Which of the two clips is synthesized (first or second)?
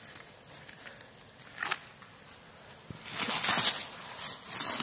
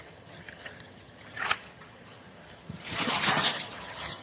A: second